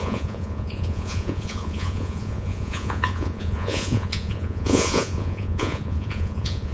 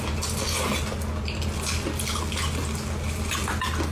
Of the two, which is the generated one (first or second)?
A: first